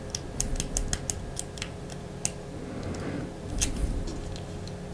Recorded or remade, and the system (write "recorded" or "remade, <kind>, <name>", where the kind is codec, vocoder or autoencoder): recorded